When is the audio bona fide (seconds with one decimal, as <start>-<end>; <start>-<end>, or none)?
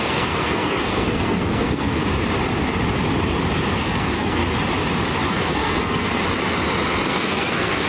2.0-3.8; 4.4-5.3; 6.2-7.1